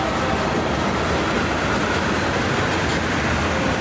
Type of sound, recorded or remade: recorded